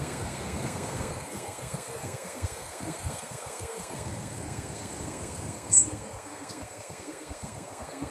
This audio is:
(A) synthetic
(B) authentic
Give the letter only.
A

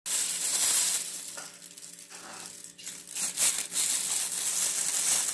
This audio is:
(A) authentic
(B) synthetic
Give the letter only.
A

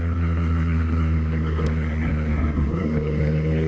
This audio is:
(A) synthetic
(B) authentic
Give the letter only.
A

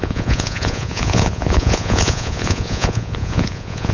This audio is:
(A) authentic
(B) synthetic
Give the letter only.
B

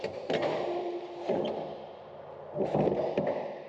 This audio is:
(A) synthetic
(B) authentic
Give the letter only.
B